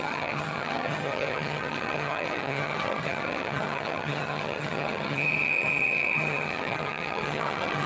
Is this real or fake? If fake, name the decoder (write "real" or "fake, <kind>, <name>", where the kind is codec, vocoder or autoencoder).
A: fake, vocoder, HiFi-GAN